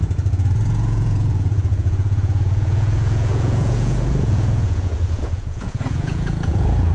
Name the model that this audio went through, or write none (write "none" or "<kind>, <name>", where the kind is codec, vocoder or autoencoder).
vocoder, Vocos